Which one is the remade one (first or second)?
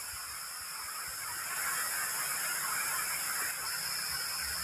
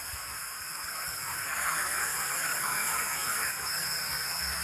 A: second